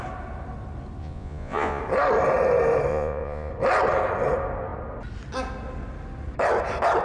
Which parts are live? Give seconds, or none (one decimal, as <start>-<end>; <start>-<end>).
0.0-1.0; 1.8-2.9; 3.5-7.0